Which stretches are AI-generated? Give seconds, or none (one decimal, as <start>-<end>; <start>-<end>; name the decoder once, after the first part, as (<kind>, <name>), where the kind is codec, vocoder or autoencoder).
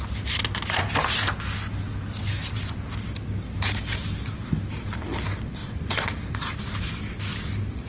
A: none